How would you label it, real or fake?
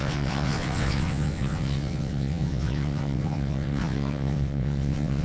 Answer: fake